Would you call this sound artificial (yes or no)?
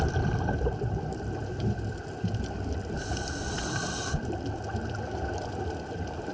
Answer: yes